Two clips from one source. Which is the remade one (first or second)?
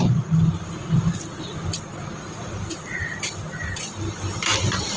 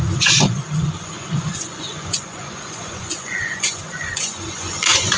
second